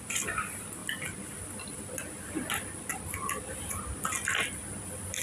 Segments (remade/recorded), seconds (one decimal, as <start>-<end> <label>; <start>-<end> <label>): 0.0-5.2 recorded